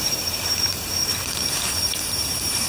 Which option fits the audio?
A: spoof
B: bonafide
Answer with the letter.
A